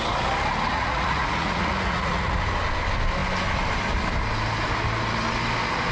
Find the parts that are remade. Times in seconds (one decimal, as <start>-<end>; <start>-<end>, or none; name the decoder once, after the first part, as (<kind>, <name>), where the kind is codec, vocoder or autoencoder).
0.7-2.4 (vocoder, Vocos)